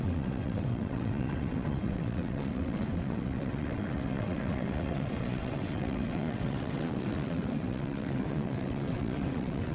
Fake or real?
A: fake